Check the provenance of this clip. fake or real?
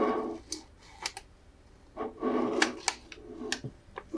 real